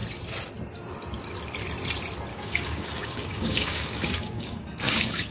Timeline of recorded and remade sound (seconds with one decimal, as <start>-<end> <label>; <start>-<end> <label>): 0.0-2.3 recorded; 2.3-5.3 remade